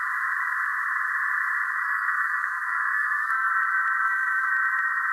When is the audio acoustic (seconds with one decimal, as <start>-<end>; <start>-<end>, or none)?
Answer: 0.0-1.8; 3.5-4.0; 4.5-5.1